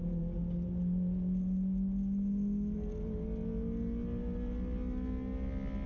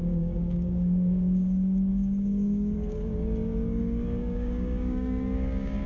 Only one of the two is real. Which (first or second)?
first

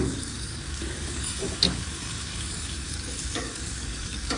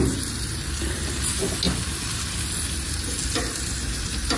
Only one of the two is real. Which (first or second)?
second